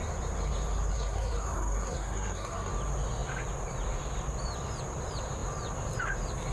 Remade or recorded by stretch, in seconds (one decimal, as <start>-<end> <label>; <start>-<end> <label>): 0.0-0.9 recorded; 0.9-2.7 remade; 2.7-6.5 recorded